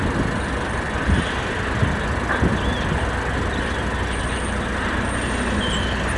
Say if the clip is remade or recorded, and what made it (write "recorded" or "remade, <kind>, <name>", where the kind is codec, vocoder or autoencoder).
recorded